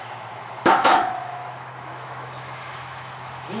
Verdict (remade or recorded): remade